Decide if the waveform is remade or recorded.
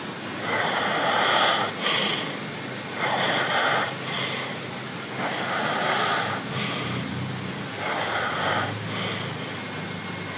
recorded